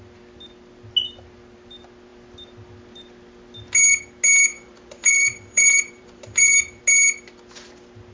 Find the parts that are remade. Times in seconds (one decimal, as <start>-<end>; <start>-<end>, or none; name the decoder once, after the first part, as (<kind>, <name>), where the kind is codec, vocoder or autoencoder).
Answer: 4.5-6.8 (vocoder, BigVGAN v2)